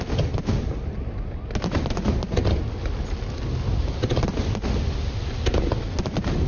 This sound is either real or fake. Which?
real